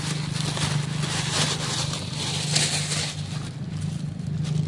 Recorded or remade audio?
recorded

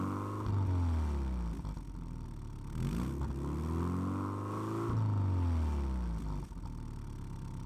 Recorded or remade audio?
recorded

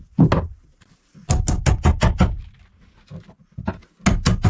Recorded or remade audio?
recorded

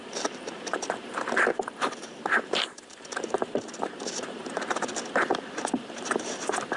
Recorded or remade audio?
remade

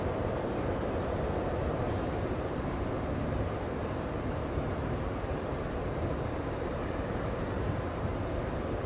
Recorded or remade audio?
remade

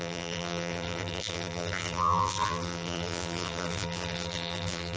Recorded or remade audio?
remade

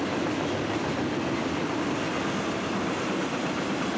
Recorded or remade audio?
recorded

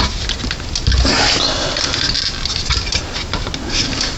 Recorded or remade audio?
recorded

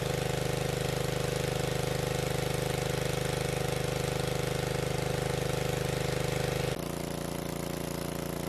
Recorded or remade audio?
recorded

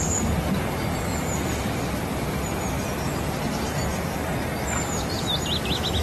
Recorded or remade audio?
recorded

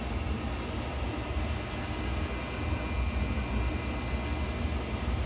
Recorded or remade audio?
recorded